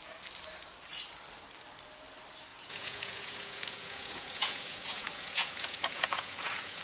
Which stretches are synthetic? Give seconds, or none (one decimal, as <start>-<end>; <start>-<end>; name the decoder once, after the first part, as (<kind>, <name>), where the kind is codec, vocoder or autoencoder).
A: 2.5-6.8 (vocoder, Vocos)